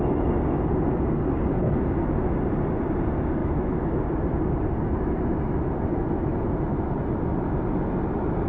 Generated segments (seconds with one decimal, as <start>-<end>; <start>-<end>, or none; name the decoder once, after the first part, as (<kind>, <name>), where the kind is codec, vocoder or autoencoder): 3.4-4.0 (autoencoder, DAC-VAE)